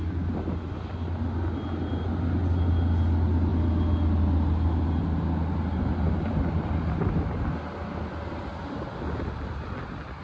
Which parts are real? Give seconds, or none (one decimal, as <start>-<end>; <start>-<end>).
0.0-10.2